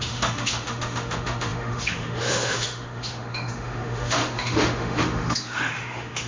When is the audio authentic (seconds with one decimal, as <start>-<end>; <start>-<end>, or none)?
none